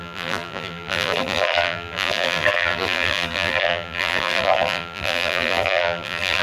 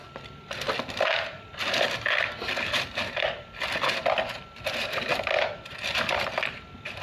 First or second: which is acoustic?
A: second